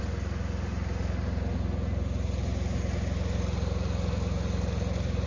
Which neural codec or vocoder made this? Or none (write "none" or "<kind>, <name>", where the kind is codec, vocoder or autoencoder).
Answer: none